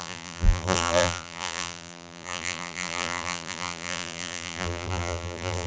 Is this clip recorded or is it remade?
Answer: remade